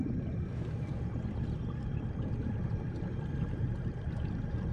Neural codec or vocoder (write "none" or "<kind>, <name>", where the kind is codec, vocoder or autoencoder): vocoder, BigVGAN v2